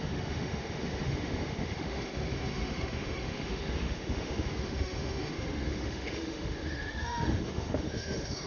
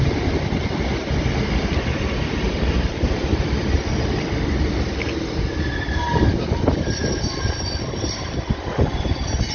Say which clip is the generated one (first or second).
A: first